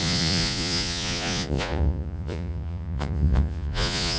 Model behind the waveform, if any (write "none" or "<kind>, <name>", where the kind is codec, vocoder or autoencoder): vocoder, Vocos